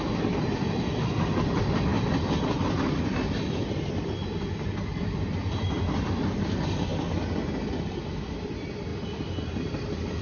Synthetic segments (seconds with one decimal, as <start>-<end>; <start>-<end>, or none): 0.0-1.9; 3.7-6.9; 8.1-10.2